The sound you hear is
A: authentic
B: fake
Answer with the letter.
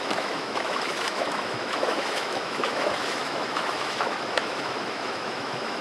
B